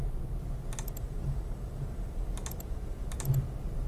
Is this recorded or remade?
recorded